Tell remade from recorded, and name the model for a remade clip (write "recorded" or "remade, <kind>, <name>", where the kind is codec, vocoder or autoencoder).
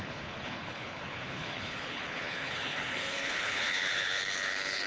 remade, codec, HILCodec